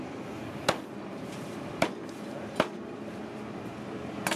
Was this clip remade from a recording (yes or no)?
no